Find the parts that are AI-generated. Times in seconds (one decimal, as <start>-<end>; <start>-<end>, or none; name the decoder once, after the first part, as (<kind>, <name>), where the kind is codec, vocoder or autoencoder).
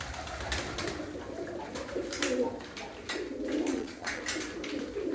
3.7-4.2 (vocoder, Vocos)